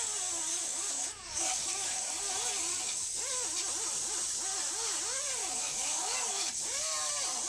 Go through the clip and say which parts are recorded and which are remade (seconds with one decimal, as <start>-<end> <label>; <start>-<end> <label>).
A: 0.0-0.5 recorded; 0.5-2.3 remade; 2.3-2.7 recorded; 2.7-3.2 remade; 3.2-5.4 recorded; 5.4-7.1 remade; 7.1-7.5 recorded